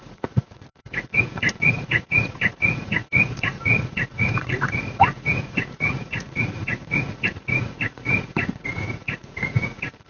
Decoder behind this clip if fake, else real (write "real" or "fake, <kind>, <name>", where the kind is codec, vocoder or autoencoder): fake, vocoder, Vocos